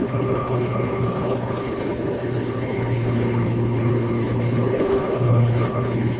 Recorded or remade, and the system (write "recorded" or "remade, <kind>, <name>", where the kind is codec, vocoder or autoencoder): remade, codec, HILCodec